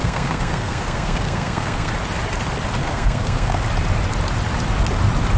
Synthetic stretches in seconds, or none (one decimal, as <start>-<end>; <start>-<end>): 0.0-1.9; 2.8-3.6